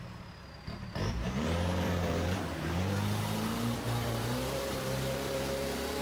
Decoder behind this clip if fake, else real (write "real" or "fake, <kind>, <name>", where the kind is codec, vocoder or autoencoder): fake, vocoder, BigVGAN v2